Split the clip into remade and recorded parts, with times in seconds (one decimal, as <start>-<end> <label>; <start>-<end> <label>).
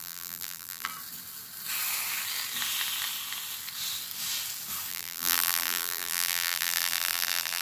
0.0-0.9 remade; 0.9-4.9 recorded; 4.9-7.6 remade